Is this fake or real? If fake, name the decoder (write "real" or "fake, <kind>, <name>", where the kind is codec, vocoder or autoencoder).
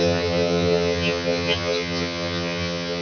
fake, vocoder, HiFi-GAN